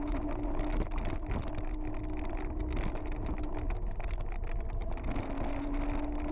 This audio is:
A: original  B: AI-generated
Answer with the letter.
A